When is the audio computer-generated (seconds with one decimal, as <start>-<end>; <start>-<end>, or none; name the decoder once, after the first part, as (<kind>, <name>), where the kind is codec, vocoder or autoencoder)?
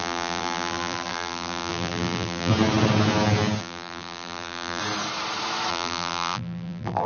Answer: 0.0-2.5 (vocoder, BigVGAN v2); 3.6-4.8; 5.7-7.1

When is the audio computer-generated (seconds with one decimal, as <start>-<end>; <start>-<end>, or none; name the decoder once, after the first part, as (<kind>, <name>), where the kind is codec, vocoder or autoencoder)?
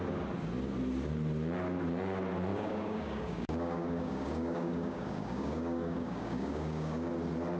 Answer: 2.5-7.1 (codec, DAC)